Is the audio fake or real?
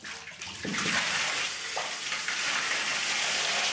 real